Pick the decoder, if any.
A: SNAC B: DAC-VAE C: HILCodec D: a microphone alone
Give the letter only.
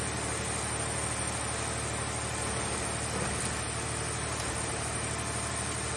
D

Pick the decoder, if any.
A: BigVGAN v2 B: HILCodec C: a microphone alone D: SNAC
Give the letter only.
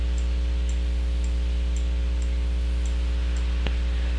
C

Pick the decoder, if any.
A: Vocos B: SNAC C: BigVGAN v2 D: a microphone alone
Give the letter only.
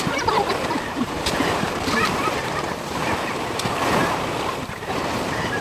C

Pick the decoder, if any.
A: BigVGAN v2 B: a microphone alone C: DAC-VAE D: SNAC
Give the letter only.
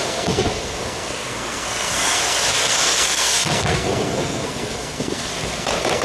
D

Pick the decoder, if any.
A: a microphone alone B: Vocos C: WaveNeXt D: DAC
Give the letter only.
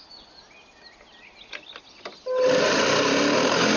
A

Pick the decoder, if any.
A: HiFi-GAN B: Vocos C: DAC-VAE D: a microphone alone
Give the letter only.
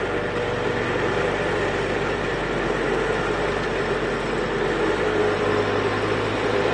D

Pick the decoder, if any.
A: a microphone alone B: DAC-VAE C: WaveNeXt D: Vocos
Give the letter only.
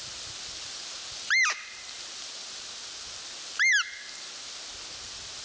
A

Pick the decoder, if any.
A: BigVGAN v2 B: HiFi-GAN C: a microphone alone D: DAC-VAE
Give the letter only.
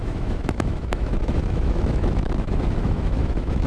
D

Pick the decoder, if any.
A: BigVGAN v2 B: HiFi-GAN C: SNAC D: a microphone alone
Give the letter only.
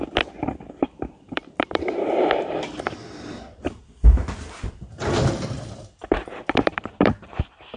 A